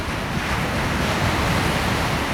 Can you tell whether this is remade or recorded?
recorded